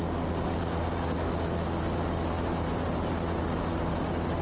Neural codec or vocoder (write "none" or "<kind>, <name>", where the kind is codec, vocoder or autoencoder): none